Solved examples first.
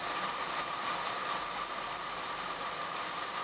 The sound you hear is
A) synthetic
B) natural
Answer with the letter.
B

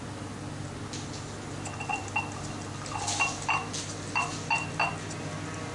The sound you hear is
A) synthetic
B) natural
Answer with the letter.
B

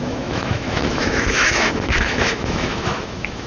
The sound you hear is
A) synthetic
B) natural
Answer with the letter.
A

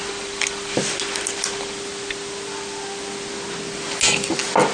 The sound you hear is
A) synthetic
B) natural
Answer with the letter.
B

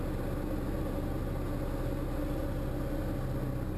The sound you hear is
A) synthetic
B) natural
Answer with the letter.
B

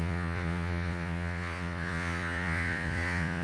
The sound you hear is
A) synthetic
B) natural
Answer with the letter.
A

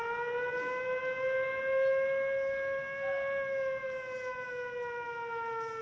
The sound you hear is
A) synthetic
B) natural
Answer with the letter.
B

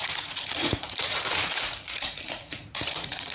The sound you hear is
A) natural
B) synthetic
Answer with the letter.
B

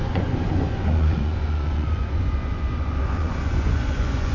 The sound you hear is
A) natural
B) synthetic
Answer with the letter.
B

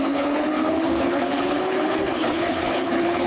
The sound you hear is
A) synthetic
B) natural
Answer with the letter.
A